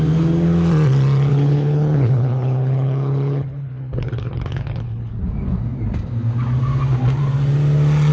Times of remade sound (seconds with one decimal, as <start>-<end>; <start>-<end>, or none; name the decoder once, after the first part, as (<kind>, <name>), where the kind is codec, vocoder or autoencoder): 1.3-5.1 (codec, HILCodec)